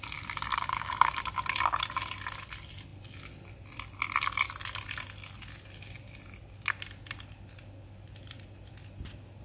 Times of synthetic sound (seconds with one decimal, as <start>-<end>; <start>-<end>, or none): 0.5-1.2

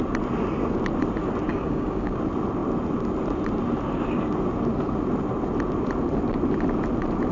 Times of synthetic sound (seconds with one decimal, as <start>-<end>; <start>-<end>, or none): 1.5-2.2

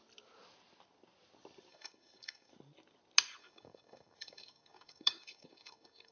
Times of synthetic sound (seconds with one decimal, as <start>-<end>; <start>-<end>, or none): 1.7-2.5; 3.4-6.1

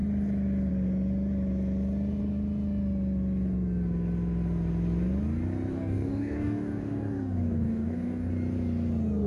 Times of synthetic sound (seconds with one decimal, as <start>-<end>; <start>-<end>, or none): 5.7-8.3

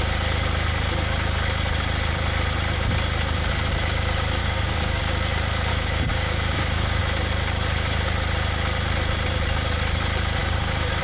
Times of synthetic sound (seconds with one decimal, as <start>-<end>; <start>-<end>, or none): 4.4-5.0; 5.7-7.0; 10.4-11.0

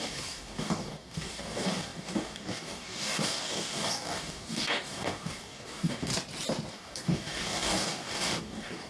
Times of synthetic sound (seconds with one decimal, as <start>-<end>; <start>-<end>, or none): 0.0-6.1; 6.7-8.9

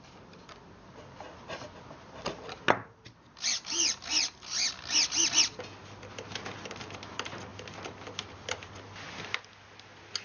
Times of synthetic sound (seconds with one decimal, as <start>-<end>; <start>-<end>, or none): none

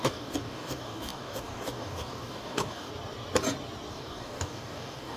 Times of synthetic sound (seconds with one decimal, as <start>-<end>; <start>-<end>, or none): 0.0-2.9; 3.9-5.2